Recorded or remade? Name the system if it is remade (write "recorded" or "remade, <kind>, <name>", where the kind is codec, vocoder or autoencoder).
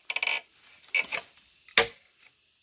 recorded